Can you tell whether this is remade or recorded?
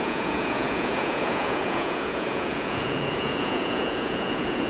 remade